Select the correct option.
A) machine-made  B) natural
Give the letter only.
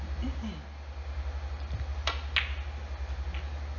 B